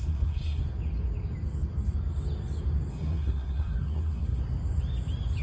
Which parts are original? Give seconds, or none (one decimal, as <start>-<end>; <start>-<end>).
0.6-2.9; 4.4-5.4